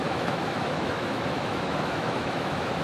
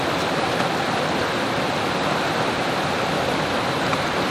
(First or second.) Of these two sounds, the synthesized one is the first